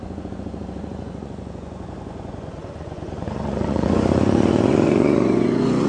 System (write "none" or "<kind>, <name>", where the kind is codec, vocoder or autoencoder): vocoder, Vocos